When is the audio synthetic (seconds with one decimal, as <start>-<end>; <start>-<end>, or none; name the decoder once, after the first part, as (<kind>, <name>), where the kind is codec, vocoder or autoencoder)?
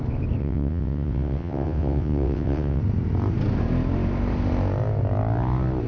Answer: 0.4-2.8 (vocoder, WaveNeXt)